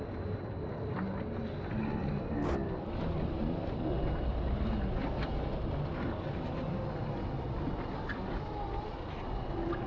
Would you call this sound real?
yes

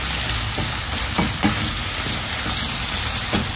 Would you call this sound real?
yes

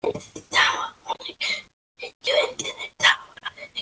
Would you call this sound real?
yes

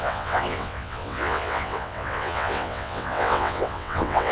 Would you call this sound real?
no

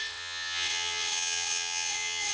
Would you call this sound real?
no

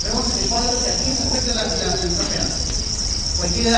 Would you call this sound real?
no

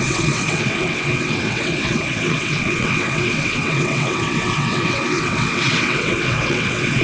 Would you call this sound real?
no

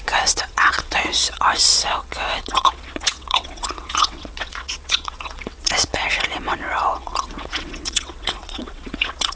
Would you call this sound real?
no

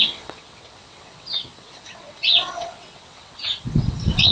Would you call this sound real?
no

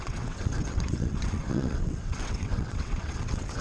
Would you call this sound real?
no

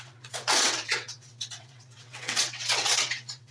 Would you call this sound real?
no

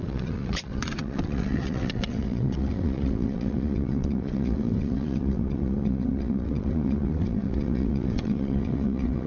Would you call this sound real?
no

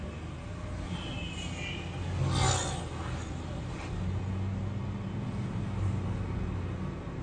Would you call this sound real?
yes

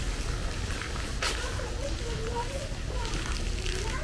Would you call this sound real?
yes